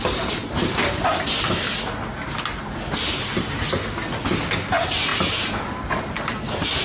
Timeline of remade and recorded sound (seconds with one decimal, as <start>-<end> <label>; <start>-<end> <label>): 0.0-6.8 recorded